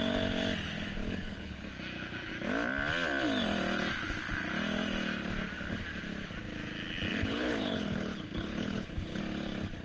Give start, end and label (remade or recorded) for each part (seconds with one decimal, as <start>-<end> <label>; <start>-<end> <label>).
0.0-1.0 recorded; 1.0-1.6 remade; 1.6-7.1 recorded; 7.1-9.2 remade; 9.2-9.8 recorded